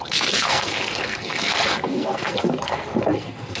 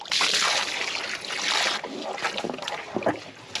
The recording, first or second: second